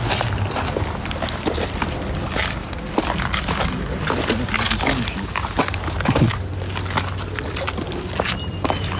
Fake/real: real